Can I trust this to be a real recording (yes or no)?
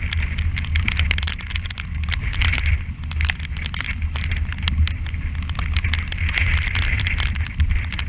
yes